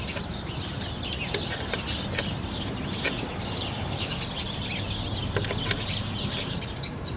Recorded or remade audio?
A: recorded